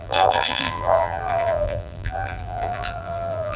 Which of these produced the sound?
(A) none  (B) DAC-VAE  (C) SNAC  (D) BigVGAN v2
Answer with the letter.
D